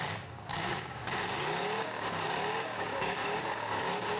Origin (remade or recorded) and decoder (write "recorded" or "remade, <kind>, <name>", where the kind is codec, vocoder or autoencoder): remade, codec, DAC